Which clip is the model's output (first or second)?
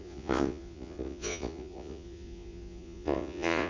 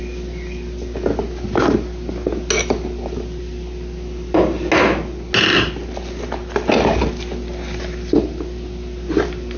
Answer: first